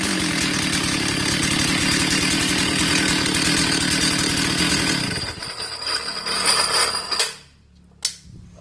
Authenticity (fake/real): real